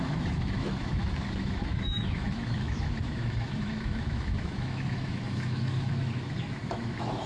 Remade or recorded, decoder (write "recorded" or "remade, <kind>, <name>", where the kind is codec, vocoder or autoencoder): remade, autoencoder, DAC-VAE